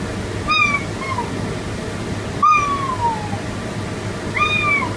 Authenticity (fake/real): real